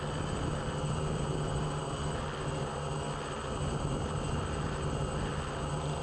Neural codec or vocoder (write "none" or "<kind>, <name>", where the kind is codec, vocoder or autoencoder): none